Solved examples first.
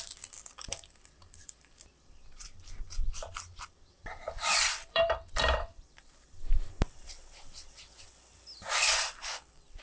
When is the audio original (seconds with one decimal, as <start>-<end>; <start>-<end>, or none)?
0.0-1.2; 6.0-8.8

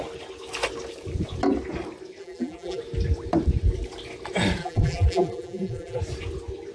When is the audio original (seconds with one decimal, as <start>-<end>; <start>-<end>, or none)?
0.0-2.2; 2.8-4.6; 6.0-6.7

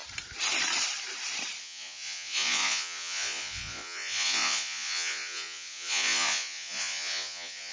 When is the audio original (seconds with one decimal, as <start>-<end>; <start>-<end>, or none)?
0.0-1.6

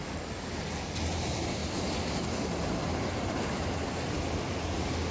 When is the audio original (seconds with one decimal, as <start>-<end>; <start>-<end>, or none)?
0.0-5.1

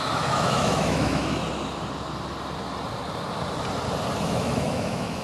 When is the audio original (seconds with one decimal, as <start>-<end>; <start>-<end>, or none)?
1.4-4.2

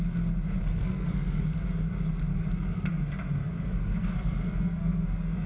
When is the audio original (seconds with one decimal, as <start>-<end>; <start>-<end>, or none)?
0.0-0.6; 1.4-2.3; 3.0-3.4

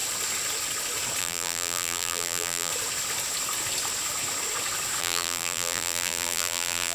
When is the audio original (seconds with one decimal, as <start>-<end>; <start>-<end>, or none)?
0.0-1.2; 2.7-5.0